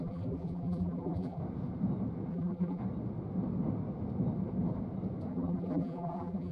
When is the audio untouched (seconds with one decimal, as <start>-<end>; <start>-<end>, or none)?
1.4-2.3; 2.8-5.3